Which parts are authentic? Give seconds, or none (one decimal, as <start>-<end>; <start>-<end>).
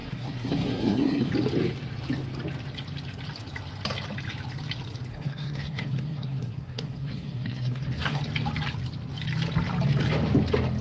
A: 1.3-5.1; 8.2-10.8